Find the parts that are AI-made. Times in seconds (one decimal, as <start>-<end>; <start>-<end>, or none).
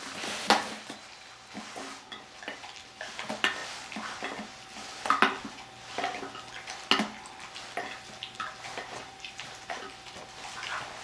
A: 8.7-9.8